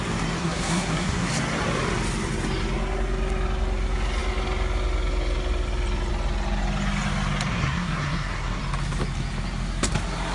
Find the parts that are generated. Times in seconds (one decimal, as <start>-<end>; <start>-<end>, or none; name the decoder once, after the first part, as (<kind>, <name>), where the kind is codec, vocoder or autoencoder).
0.4-1.3 (codec, SNAC); 7.5-8.6